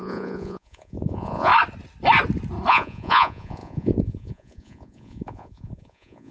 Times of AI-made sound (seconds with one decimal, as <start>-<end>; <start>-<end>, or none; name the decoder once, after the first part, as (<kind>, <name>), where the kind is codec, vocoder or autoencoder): 0.0-1.5 (vocoder, Vocos); 2.7-6.3